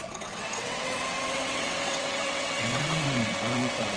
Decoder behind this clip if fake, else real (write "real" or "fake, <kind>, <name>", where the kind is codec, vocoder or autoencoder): fake, vocoder, WaveNeXt